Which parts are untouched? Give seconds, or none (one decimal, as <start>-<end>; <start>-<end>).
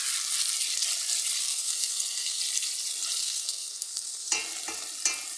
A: 0.0-1.4; 2.4-3.2; 4.3-5.4